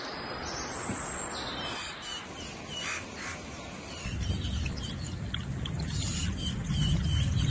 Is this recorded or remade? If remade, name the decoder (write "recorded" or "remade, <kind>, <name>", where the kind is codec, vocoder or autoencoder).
recorded